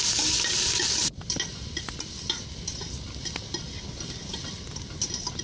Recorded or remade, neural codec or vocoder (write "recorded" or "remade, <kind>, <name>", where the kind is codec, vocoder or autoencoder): recorded